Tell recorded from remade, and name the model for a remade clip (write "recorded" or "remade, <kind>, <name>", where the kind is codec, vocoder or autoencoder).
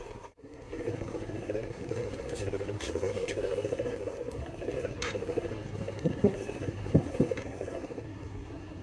remade, codec, SNAC